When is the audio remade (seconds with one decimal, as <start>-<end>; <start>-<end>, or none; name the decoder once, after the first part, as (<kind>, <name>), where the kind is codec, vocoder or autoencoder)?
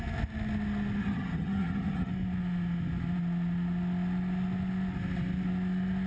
1.0-2.1 (vocoder, HiFi-GAN)